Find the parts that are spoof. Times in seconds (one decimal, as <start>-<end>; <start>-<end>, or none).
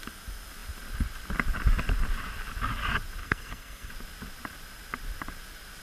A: 3.2-3.9